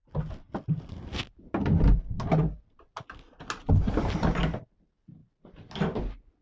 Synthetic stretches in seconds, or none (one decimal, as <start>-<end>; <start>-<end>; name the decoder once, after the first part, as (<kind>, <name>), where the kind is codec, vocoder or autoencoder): none